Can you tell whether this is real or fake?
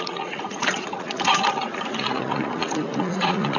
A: fake